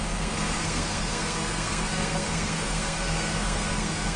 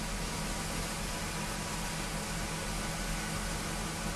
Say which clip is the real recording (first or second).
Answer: second